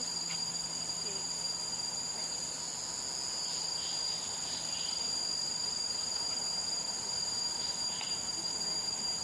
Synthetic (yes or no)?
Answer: no